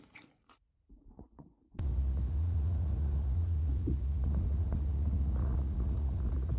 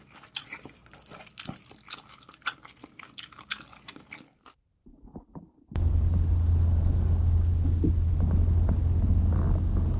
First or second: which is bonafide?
second